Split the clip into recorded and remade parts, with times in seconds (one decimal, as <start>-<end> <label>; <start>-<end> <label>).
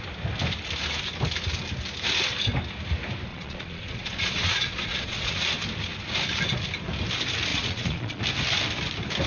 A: 0.0-3.3 recorded; 3.3-5.4 remade; 5.4-7.5 recorded; 7.5-8.2 remade; 8.2-9.3 recorded